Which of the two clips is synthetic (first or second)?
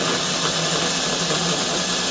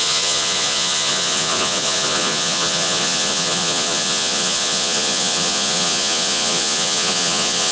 second